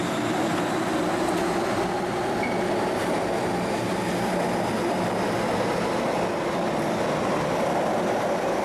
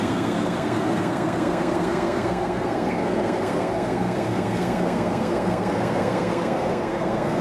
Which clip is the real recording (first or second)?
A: first